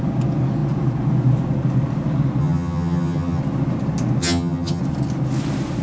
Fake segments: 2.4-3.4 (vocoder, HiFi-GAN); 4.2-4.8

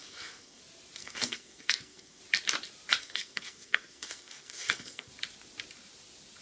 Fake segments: 0.0-0.6 (codec, SNAC); 1.0-2.2; 3.0-5.1

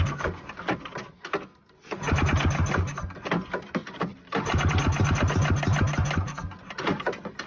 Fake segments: none

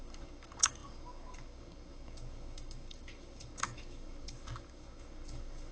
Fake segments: 0.0-5.7 (codec, DAC)

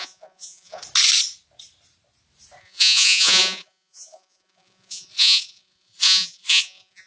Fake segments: 0.0-0.8 (vocoder, Vocos); 2.6-7.1

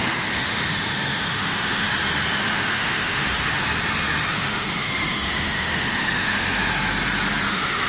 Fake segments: 0.0-1.9 (autoencoder, DAC-VAE); 2.4-3.6; 4.3-6.7; 7.5-7.9